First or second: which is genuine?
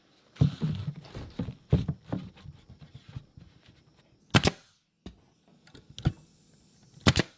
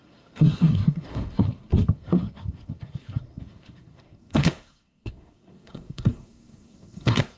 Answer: first